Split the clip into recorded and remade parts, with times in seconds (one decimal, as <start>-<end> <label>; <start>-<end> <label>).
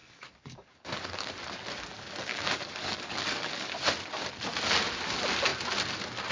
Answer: 0.0-1.3 remade; 1.3-2.3 recorded; 2.3-3.7 remade; 3.7-6.3 recorded